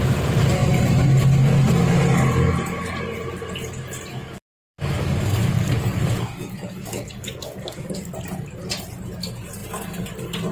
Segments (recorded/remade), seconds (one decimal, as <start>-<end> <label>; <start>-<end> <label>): 0.0-4.1 recorded; 4.1-8.1 remade; 8.1-10.5 recorded